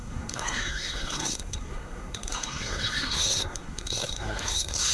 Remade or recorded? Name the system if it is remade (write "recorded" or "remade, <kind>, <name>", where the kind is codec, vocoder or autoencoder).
remade, codec, SNAC